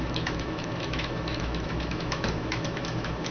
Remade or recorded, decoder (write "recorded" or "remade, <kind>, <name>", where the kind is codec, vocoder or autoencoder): remade, autoencoder, DAC-VAE